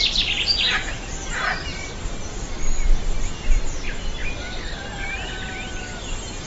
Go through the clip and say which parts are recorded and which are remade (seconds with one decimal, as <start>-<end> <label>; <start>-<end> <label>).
0.0-6.5 recorded